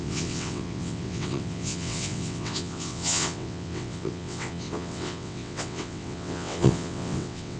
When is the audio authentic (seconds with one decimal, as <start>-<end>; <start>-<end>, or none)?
none